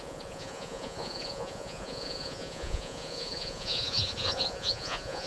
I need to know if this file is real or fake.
fake